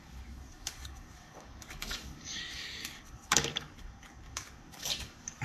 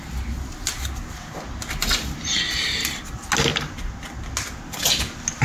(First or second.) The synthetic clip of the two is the first